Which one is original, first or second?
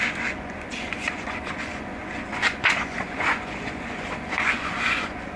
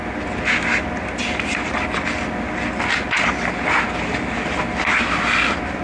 second